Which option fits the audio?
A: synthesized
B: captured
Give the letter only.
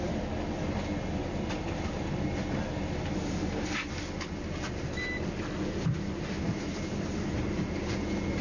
B